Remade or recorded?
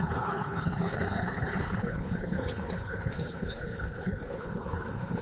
remade